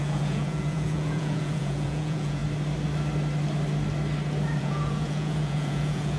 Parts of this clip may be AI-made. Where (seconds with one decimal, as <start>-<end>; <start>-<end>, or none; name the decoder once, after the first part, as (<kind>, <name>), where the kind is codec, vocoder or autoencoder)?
0.0-2.4 (vocoder, Vocos); 4.6-6.2